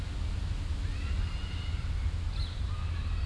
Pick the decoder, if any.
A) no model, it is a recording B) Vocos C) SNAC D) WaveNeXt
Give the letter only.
A